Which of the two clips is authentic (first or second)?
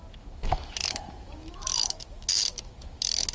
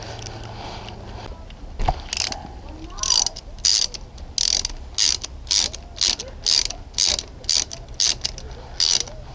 second